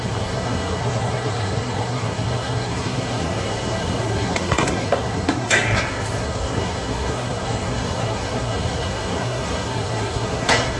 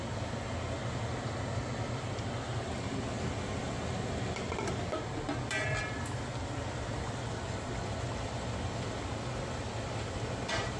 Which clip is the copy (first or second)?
first